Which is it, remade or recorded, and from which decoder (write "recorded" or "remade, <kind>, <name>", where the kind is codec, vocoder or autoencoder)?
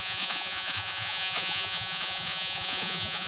remade, vocoder, Vocos